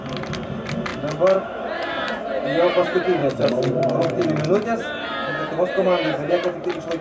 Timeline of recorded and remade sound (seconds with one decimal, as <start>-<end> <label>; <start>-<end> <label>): 0.0-3.2 recorded; 3.2-4.3 remade; 4.3-7.0 recorded